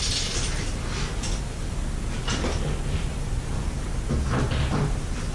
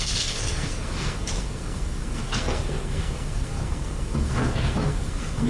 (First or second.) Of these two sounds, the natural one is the first